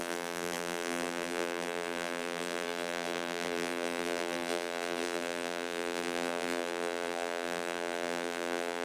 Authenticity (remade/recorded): remade